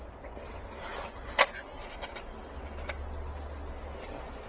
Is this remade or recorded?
recorded